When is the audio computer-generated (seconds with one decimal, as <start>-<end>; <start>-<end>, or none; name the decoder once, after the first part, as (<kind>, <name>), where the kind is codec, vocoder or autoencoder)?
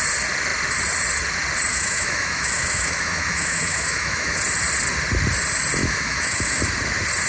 1.7-4.4 (autoencoder, DAC-VAE); 5.8-6.6